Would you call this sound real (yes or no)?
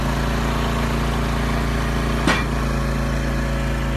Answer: yes